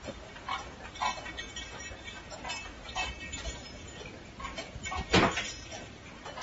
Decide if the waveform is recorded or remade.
recorded